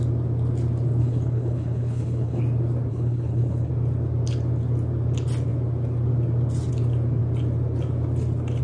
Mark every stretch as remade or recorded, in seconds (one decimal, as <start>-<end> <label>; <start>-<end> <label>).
0.0-1.0 recorded; 1.0-2.4 remade; 2.4-2.9 recorded; 2.9-3.7 remade; 3.7-8.6 recorded